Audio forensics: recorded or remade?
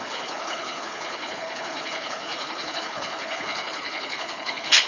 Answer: remade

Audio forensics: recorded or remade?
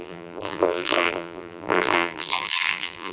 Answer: remade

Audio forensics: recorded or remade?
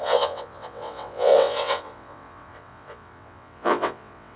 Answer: remade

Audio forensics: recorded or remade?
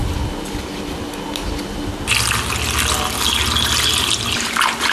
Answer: recorded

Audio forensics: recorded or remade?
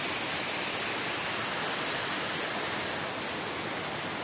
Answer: recorded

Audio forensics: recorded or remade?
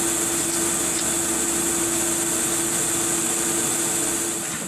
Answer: recorded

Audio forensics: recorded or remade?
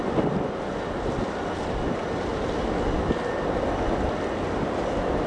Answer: recorded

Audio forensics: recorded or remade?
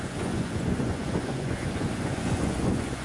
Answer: remade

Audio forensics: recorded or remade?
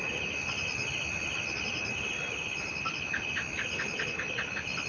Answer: recorded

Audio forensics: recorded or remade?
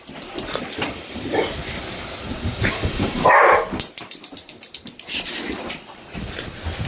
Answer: recorded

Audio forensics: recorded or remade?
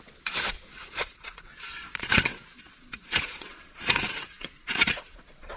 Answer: remade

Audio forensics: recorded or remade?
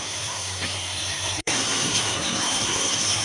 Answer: remade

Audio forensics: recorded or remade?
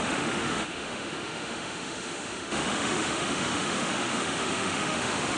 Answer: remade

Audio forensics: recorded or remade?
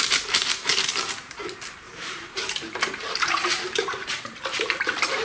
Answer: remade